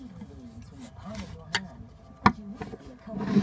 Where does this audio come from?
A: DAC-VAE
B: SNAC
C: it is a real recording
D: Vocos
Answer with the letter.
C